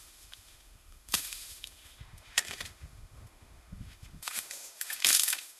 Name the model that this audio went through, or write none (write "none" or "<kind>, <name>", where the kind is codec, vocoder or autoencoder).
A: autoencoder, DAC-VAE